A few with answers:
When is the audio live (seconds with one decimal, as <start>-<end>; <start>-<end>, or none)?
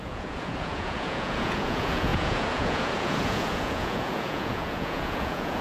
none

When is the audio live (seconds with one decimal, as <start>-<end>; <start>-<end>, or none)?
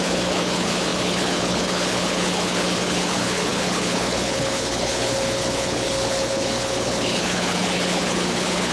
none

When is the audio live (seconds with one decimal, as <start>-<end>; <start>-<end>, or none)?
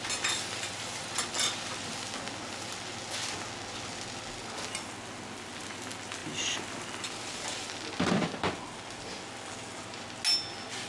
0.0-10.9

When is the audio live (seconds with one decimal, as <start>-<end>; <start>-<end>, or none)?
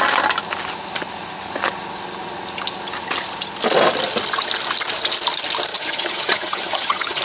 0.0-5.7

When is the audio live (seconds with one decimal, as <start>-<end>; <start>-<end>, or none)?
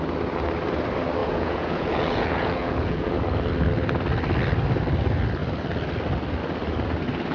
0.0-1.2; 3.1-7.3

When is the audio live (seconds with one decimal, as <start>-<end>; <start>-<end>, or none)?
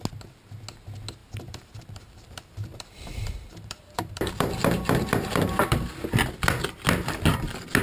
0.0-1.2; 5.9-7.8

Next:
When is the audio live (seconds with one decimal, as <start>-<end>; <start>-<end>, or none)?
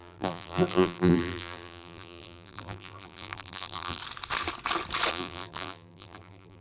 4.0-5.1